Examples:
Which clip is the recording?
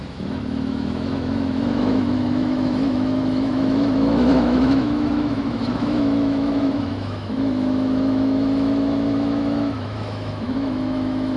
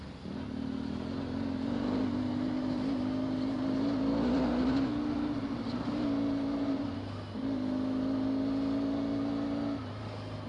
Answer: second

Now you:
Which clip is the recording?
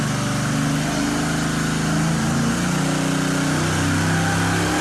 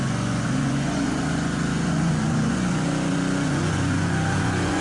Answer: first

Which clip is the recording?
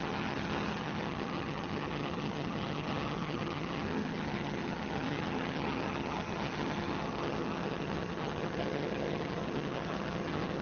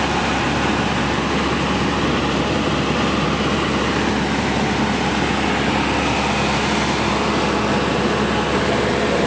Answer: second